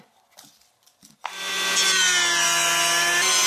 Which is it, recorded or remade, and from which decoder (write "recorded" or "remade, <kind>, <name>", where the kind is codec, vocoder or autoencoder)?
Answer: recorded